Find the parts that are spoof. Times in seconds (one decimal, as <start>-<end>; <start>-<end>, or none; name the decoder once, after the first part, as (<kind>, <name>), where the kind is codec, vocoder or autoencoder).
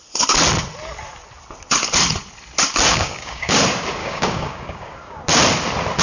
2.9-3.6 (codec, DAC); 4.0-5.2